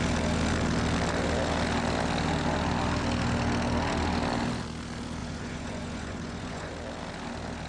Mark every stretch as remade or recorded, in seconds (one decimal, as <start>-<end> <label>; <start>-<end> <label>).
0.0-5.2 recorded; 5.2-6.7 remade; 6.7-7.7 recorded